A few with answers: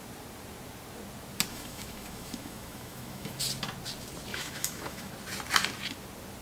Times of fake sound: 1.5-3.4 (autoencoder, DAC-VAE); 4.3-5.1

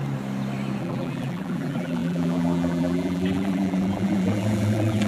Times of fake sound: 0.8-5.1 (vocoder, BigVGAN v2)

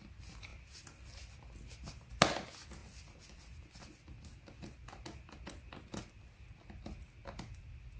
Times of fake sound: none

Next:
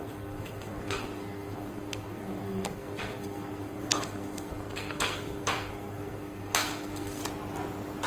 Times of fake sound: 0.0-7.2 (codec, SNAC)

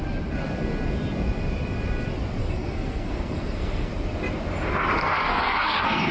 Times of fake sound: 2.4-3.9 (codec, SNAC); 5.0-6.1

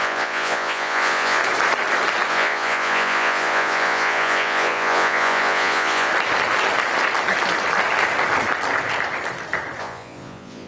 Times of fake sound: 0.0-1.4 (vocoder, Vocos); 2.3-6.1; 9.8-10.7

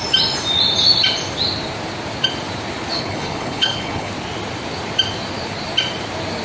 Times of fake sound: 2.9-4.1 (codec, HILCodec)